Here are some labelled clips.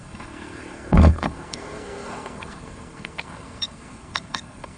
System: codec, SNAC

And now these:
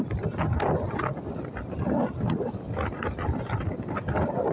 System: none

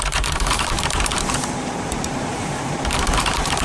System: vocoder, BigVGAN v2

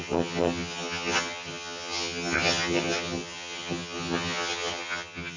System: vocoder, HiFi-GAN